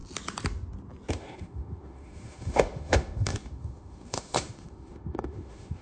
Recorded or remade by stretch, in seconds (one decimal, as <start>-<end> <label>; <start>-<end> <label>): 0.0-1.1 recorded; 1.1-5.8 remade